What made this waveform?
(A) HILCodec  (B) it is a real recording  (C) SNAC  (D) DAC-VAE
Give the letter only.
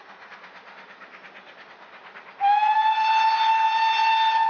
B